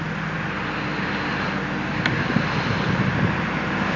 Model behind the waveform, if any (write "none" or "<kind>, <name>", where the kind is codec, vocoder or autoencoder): none